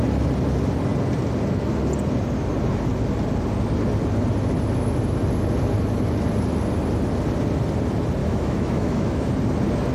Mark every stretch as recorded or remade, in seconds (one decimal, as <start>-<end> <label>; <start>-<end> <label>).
0.0-8.2 recorded; 8.2-9.3 remade; 9.3-9.9 recorded